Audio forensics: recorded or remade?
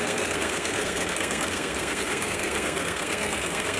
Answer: remade